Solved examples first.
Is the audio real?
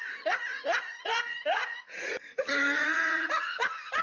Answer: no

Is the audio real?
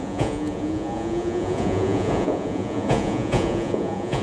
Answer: no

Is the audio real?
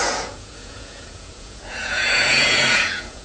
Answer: no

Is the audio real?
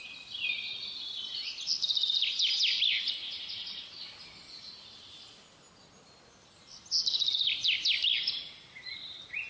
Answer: yes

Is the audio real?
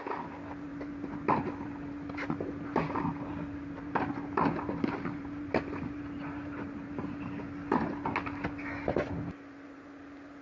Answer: yes